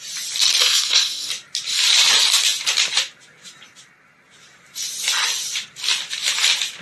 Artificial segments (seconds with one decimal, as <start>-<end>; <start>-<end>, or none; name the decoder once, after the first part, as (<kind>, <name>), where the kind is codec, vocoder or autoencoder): 0.6-1.3 (codec, SNAC)